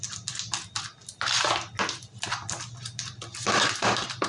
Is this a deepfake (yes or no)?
no